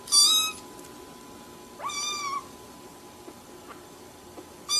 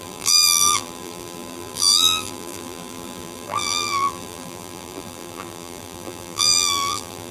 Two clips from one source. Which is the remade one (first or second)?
second